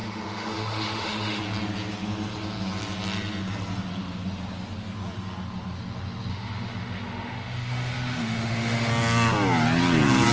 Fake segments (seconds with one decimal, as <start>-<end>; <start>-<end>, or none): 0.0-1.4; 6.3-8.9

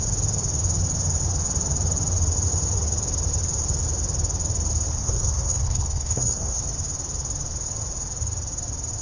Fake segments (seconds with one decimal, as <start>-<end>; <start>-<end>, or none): 4.9-6.6

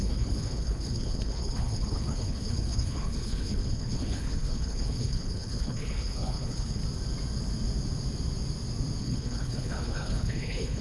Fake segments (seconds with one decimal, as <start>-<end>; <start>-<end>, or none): 0.0-6.8; 9.0-10.8

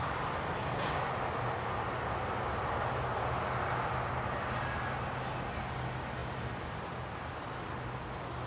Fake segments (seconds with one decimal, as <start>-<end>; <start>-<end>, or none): 6.2-6.8